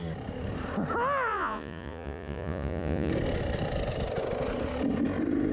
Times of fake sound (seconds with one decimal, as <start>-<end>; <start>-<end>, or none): 1.3-3.1